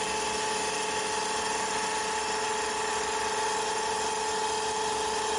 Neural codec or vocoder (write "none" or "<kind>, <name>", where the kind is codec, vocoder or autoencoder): none